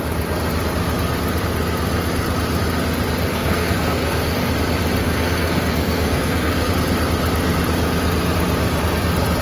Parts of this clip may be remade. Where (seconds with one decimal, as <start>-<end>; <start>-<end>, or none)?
3.3-4.5; 5.0-6.7